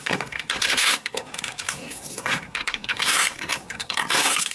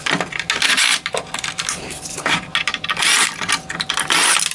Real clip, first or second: second